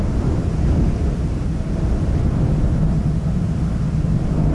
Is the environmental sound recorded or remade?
recorded